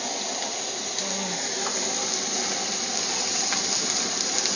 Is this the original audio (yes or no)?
yes